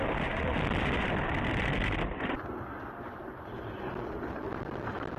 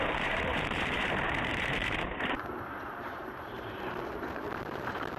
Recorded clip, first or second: first